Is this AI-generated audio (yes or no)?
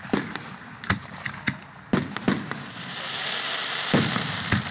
no